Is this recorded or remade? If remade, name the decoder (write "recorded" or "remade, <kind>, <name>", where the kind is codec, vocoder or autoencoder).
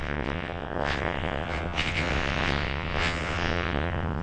remade, vocoder, WaveNeXt